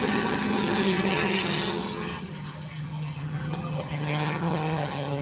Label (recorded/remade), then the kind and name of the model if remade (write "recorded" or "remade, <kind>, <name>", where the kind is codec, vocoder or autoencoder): remade, vocoder, HiFi-GAN